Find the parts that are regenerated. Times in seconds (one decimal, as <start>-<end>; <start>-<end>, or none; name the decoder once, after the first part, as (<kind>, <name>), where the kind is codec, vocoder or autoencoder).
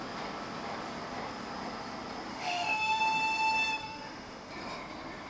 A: 2.3-3.0 (autoencoder, DAC-VAE); 3.8-4.5